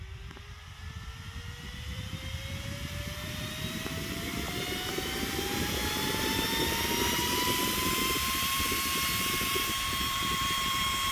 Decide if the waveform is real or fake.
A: fake